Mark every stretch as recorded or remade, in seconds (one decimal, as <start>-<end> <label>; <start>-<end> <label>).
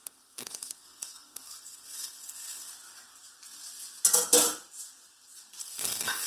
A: 0.0-2.7 remade; 2.7-5.6 recorded; 5.6-6.3 remade